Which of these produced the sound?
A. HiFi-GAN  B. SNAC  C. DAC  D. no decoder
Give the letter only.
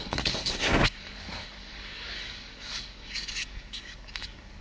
C